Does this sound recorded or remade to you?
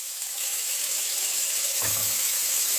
remade